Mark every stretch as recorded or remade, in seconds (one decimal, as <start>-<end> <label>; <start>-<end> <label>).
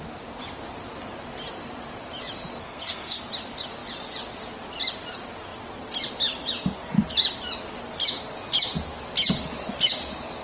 0.0-2.6 recorded; 2.6-3.2 remade; 3.2-10.4 recorded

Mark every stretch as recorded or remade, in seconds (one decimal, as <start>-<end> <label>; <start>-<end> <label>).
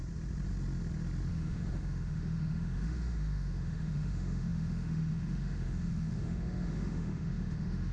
0.0-1.3 recorded; 1.3-7.9 remade